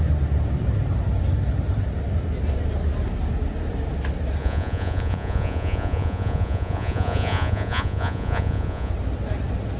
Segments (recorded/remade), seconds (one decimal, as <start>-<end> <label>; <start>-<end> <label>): 0.0-4.4 recorded; 4.4-8.9 remade; 8.9-9.8 recorded